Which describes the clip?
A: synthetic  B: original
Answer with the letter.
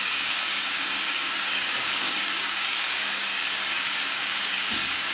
A